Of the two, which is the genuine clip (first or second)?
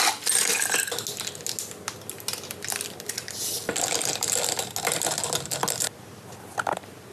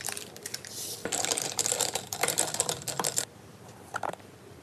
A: first